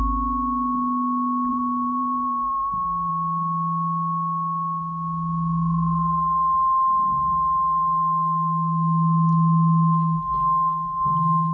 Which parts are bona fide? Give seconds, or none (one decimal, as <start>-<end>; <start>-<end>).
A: 0.0-1.5; 3.1-11.5